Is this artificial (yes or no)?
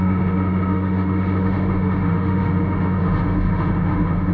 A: yes